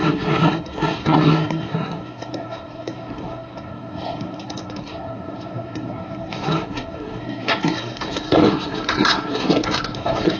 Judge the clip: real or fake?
fake